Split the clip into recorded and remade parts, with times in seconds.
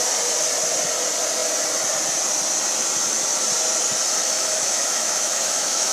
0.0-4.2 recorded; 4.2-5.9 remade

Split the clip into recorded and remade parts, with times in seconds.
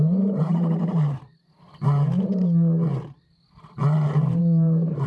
0.0-1.3 remade; 1.3-4.4 recorded; 4.4-5.1 remade